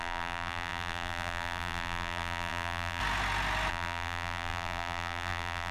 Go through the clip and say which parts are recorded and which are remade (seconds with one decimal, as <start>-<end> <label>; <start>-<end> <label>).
0.0-3.0 remade; 3.0-3.7 recorded; 3.7-5.7 remade